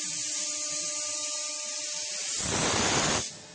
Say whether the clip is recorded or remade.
recorded